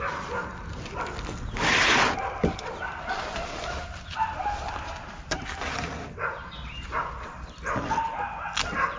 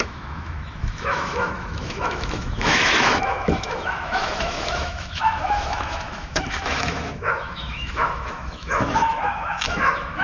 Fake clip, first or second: second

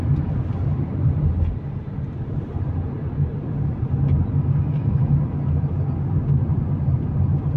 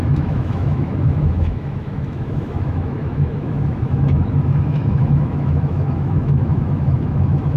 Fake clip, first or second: second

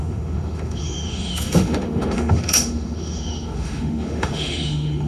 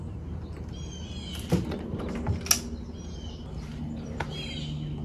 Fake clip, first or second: first